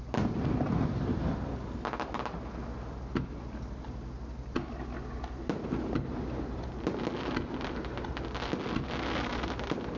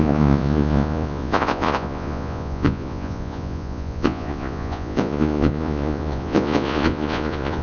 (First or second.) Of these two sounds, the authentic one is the first